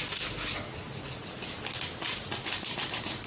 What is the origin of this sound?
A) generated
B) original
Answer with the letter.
B